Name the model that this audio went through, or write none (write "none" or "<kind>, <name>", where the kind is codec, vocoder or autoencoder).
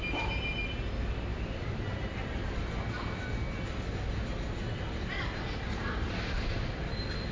none